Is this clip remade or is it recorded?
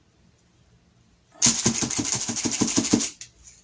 recorded